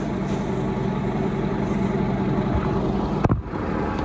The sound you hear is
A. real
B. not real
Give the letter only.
A